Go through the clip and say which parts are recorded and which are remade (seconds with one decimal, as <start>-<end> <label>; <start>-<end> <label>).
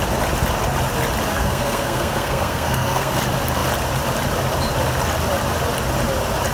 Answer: 0.0-1.3 recorded; 1.3-3.2 remade; 3.2-6.5 recorded